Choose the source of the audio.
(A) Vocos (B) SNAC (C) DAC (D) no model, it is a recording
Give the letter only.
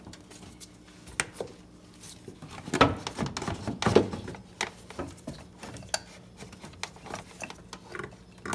D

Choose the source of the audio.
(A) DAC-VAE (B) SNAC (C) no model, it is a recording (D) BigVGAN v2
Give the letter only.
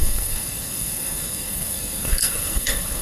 B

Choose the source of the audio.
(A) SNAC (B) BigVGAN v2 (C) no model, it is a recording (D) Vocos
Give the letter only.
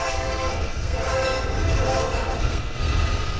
A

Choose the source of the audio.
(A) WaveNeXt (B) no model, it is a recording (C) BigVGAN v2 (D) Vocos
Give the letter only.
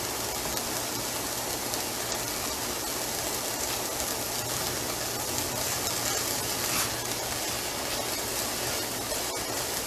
B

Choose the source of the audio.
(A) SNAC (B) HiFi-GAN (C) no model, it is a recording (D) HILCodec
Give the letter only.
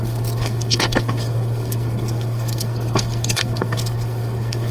A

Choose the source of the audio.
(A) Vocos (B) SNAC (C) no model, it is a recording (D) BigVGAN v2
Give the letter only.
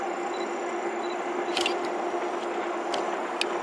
C